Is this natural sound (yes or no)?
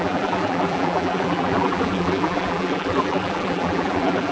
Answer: no